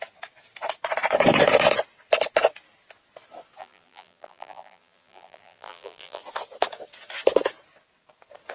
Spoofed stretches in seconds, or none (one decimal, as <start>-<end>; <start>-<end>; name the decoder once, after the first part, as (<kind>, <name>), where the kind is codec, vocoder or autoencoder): 3.6-6.2 (vocoder, BigVGAN v2)